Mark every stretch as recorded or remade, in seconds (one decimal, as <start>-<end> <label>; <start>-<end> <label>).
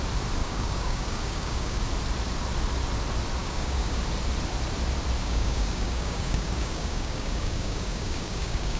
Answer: 0.0-0.4 recorded; 0.4-1.8 remade; 1.8-3.4 recorded; 3.4-4.0 remade; 4.0-5.2 recorded; 5.2-8.8 remade